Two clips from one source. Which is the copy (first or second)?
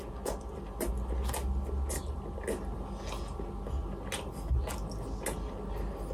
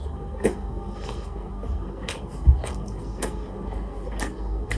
second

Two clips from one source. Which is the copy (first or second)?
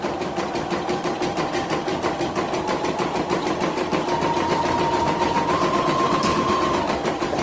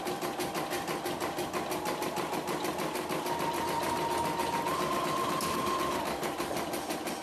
first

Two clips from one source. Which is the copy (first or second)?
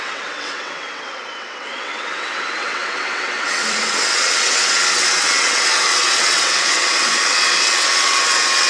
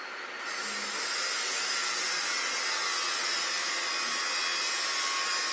first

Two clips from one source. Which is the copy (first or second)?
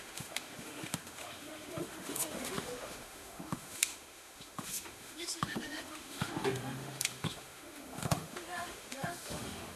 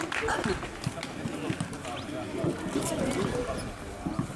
first